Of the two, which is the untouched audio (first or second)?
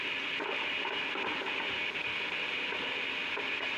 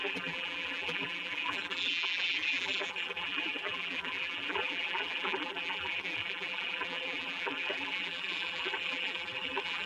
first